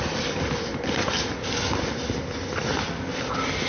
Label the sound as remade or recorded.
recorded